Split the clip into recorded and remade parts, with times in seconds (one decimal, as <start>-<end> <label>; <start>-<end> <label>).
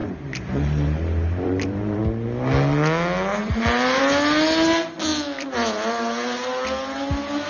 0.0-2.0 remade; 2.0-3.3 recorded; 3.3-4.0 remade; 4.0-7.5 recorded